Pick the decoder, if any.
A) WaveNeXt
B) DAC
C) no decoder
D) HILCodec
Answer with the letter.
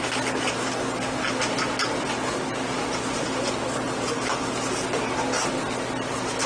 C